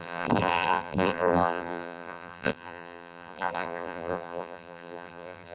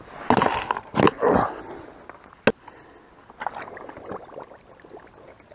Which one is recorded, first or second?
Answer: second